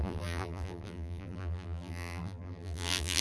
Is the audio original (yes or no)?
no